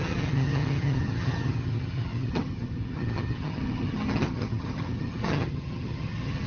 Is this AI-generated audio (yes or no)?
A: yes